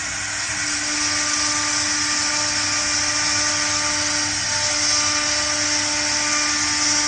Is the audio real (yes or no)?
yes